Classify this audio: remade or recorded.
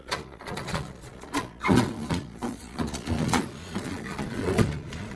remade